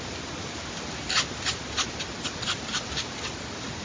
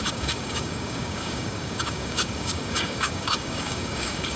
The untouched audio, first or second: first